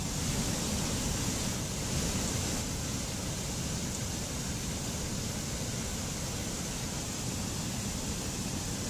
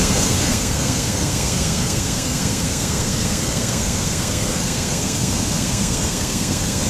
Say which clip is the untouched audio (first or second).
first